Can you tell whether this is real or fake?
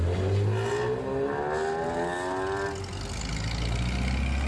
real